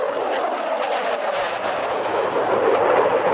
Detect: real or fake real